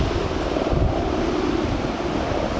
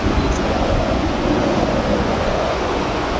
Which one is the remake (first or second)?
second